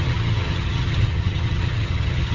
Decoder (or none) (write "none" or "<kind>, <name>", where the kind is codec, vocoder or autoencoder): vocoder, HiFi-GAN